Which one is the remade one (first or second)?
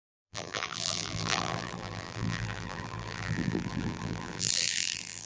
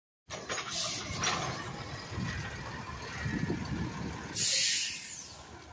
first